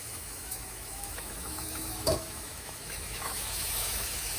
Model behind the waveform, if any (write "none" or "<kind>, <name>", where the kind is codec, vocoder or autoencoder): autoencoder, DAC-VAE